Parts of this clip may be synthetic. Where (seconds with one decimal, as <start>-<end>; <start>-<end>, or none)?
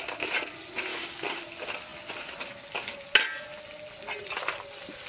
0.9-1.4